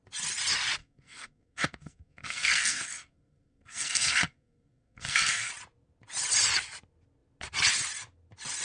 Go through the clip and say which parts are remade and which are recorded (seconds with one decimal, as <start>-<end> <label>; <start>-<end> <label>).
0.0-0.8 recorded; 0.8-5.5 remade; 5.5-8.6 recorded